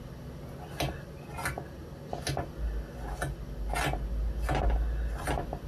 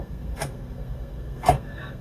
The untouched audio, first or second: first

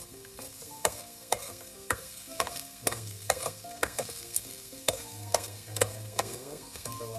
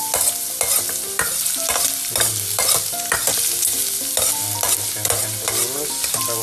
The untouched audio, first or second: second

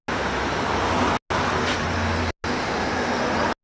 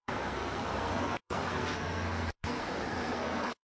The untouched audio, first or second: first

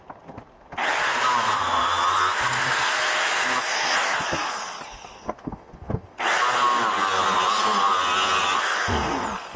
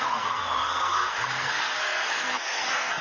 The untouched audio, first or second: first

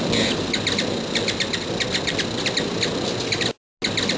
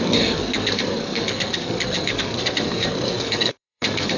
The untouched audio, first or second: first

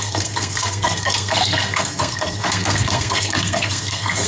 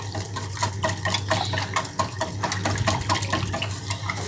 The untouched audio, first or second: second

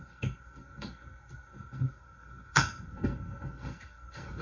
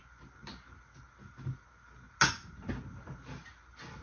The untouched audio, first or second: second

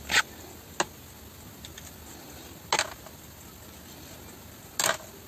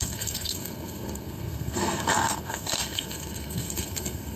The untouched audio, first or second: first